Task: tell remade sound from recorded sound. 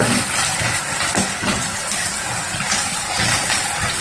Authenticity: recorded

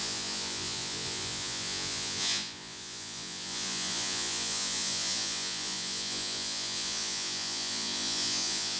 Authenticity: remade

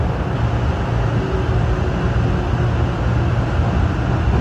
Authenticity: recorded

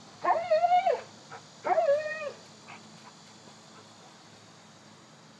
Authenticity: recorded